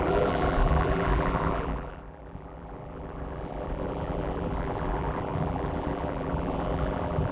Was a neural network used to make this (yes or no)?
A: yes